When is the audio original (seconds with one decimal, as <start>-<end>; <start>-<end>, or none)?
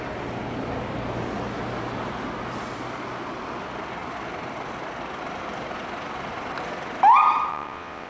0.0-7.5